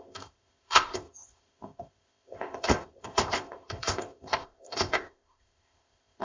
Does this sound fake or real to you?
fake